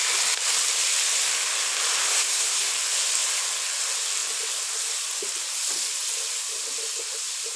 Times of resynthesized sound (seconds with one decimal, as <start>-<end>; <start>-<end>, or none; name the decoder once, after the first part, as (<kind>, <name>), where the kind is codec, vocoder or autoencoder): 2.0-2.7 (codec, SNAC)